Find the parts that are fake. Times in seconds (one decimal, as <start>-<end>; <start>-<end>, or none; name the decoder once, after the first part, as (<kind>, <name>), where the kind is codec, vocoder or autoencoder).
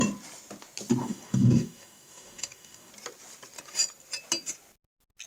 1.0-2.9 (codec, DAC)